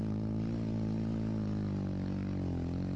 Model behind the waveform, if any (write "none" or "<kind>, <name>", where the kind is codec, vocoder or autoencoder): none